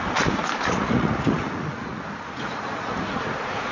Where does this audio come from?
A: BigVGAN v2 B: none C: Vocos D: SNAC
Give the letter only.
C